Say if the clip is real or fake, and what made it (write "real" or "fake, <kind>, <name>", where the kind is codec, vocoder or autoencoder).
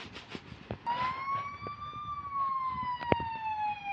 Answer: real